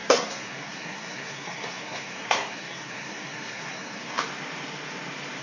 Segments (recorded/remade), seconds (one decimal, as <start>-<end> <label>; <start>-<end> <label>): 0.0-4.2 remade; 4.2-5.4 recorded